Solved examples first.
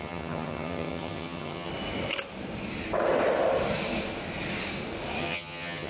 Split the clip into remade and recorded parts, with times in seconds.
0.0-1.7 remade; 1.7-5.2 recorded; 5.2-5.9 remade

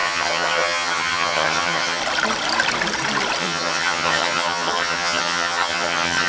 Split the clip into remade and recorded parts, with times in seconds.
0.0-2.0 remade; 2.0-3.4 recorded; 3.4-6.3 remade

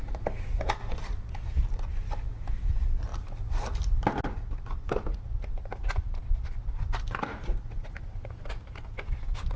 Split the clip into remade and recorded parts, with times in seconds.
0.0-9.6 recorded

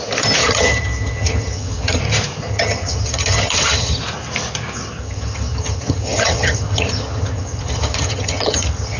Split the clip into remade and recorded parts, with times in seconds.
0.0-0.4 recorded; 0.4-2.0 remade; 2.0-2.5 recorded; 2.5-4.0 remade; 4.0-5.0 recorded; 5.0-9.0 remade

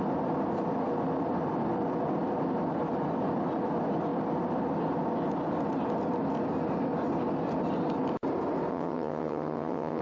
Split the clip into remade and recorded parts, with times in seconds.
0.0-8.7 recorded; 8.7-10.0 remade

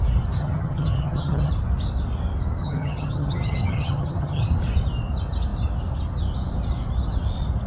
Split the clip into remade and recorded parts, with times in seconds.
0.0-0.4 recorded; 0.4-1.5 remade; 1.5-2.6 recorded; 2.6-4.5 remade; 4.5-7.7 recorded

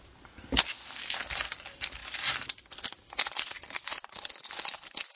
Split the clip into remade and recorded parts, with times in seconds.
0.0-5.2 recorded